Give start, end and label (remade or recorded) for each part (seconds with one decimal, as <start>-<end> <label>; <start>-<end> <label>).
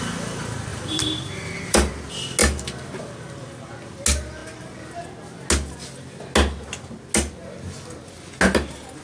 0.0-0.7 recorded; 0.7-1.9 remade; 1.9-2.4 recorded; 2.4-3.7 remade; 3.7-9.0 recorded